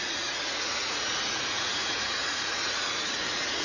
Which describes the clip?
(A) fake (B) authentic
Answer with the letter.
A